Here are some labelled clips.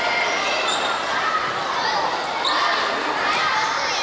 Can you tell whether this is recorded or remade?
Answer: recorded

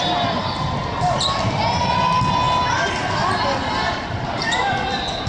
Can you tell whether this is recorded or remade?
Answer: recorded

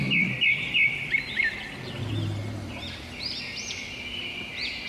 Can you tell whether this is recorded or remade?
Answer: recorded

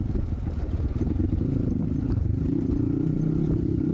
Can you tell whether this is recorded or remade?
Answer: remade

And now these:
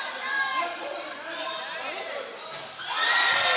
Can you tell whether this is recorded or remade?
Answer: remade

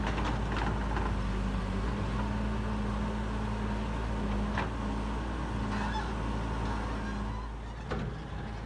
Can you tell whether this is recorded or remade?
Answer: recorded